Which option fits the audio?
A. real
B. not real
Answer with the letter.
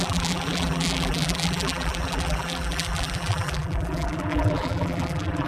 B